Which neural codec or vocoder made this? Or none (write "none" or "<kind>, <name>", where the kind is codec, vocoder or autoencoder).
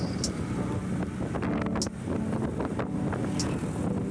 none